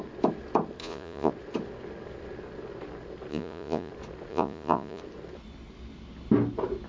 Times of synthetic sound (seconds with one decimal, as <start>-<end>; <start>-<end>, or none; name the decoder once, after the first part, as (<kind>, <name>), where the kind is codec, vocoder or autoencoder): 0.8-1.3 (vocoder, Vocos); 3.3-3.9; 4.3-5.0